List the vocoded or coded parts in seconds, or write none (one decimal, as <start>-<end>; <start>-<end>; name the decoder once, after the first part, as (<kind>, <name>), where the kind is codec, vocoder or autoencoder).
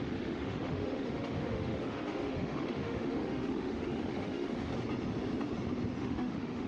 0.0-4.7 (autoencoder, DAC-VAE); 6.0-6.7